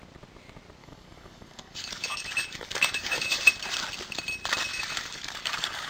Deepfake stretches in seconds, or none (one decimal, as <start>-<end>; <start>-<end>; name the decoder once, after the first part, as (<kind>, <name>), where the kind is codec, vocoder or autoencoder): 0.8-3.4 (codec, DAC); 4.7-5.9